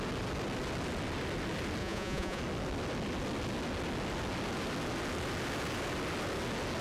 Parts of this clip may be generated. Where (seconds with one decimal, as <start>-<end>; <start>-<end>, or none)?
1.8-2.4